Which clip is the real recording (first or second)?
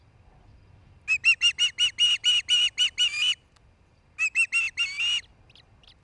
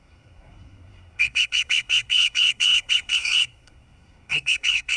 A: first